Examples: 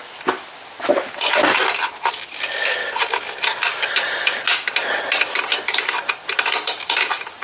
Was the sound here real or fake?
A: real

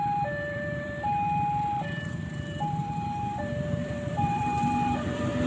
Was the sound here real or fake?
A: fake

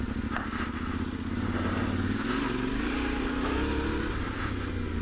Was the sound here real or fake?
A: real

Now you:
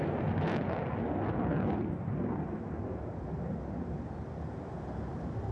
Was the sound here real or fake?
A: real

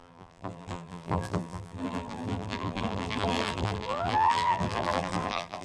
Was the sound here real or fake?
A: fake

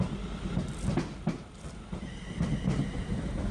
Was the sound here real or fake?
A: real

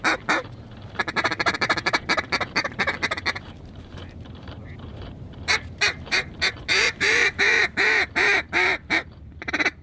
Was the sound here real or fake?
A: fake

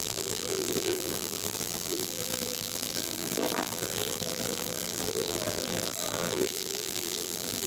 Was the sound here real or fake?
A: fake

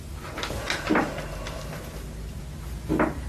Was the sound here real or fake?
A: real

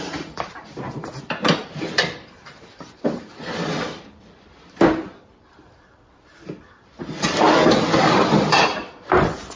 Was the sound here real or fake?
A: fake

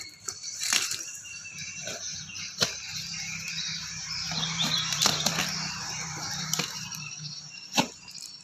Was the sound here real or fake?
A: fake